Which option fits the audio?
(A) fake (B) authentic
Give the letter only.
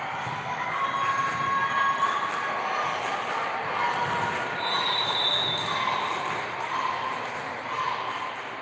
B